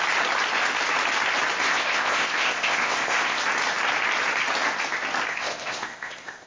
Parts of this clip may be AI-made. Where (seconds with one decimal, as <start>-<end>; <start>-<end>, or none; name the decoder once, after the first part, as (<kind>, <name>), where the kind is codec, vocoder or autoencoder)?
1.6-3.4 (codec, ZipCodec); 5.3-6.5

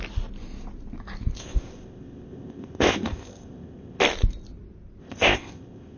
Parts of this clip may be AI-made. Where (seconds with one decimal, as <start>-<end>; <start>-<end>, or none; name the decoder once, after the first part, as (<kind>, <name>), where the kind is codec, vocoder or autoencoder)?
1.4-4.0 (codec, ZipCodec); 5.0-6.0

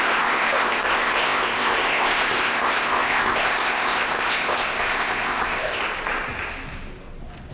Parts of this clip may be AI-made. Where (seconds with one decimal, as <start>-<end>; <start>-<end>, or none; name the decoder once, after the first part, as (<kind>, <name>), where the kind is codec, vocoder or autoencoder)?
0.0-5.8 (codec, ZipCodec)

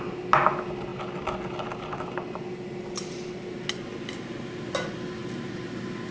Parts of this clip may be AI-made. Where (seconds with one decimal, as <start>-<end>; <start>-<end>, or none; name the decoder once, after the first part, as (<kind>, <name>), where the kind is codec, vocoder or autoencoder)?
none

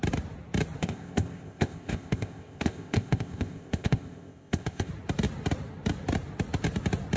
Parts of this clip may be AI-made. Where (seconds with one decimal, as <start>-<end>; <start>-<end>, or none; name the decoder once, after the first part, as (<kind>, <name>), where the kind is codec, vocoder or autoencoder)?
0.8-4.9 (codec, ZipCodec)

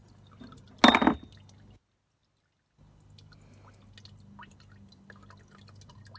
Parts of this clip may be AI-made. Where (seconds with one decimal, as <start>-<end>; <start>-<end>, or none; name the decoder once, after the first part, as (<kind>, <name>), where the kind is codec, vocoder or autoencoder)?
none

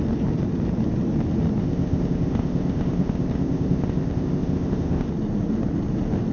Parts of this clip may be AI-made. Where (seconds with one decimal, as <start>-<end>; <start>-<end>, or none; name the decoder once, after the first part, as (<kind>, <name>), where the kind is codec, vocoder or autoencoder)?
1.6-5.1 (codec, ZipCodec)

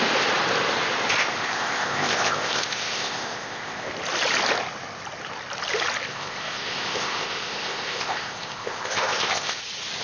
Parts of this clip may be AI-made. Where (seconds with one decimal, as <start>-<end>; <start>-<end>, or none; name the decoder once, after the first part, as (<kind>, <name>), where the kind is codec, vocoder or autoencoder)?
1.2-3.9 (codec, ZipCodec); 6.1-9.6